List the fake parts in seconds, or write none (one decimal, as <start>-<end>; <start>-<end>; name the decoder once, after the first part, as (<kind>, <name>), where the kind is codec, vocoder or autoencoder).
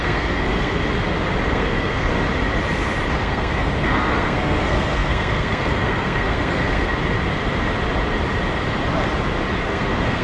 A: 0.0-0.8 (codec, SNAC); 1.5-2.1; 3.1-6.9; 9.6-10.2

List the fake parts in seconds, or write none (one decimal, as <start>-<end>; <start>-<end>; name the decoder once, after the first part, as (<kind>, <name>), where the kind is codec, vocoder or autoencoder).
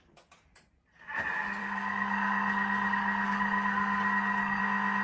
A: 1.6-4.6 (codec, SNAC)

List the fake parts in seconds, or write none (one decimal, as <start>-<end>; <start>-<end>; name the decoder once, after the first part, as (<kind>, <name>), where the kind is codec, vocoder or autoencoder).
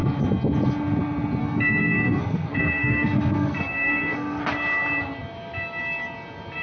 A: 1.4-4.4 (codec, SNAC)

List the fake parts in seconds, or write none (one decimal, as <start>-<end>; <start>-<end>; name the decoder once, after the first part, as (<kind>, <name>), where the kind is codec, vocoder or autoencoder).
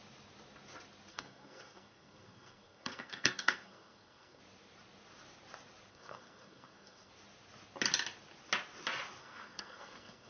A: 1.1-4.4 (codec, SNAC); 5.9-7.1; 9.2-10.3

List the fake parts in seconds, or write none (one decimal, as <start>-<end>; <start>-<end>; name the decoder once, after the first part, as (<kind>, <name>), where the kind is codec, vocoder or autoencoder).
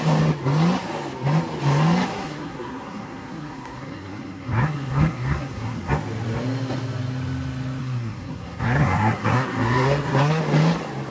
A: 2.1-5.9 (codec, SNAC); 7.8-10.4